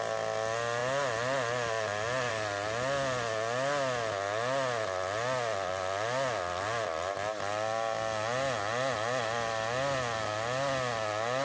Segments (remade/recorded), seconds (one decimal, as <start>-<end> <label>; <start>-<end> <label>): 0.0-11.4 recorded